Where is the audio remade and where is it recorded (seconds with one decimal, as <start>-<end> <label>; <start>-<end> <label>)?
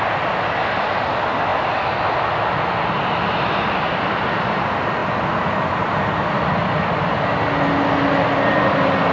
0.0-9.1 recorded